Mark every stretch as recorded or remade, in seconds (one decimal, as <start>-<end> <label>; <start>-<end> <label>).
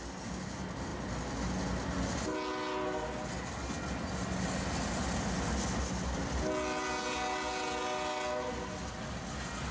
0.0-9.7 recorded